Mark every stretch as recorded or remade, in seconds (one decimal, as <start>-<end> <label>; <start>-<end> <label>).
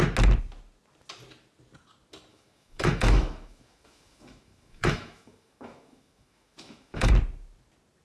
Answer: 0.0-2.3 recorded; 2.3-7.1 remade; 7.1-8.0 recorded